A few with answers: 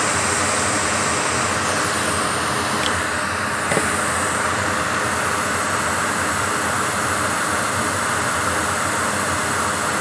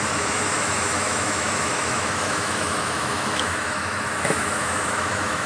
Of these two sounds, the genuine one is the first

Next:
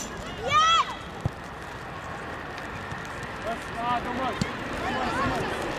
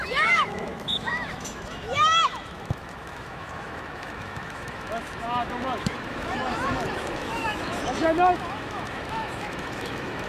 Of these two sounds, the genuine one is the first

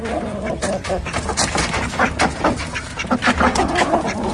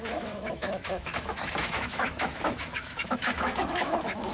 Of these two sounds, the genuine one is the first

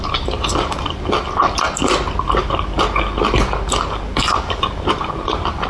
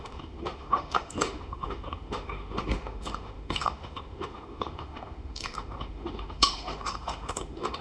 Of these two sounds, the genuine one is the first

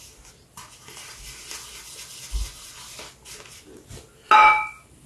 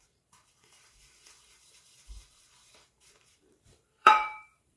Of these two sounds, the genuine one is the first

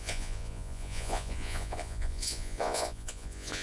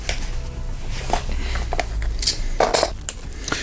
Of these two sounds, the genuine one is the second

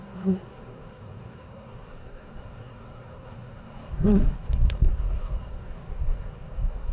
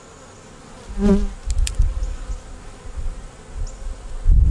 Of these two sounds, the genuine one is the second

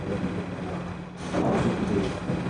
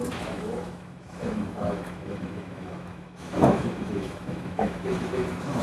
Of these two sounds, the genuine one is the first